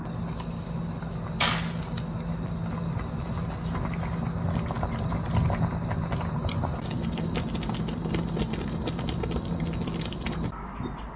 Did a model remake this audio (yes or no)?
no